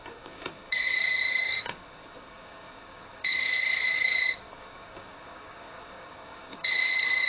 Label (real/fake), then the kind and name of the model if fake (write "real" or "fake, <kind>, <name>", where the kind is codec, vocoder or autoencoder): fake, codec, DAC